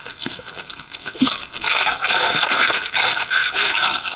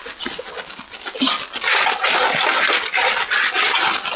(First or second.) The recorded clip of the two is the second